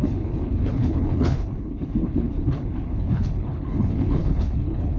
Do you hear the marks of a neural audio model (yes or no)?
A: yes